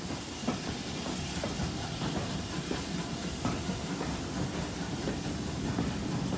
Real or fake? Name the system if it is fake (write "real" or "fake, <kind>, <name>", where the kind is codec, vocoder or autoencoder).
real